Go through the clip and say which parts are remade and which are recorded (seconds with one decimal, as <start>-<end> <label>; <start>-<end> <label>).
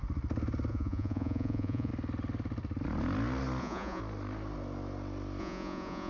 0.0-0.7 recorded; 0.7-1.9 remade; 1.9-3.6 recorded; 3.6-4.0 remade; 4.0-5.4 recorded; 5.4-6.1 remade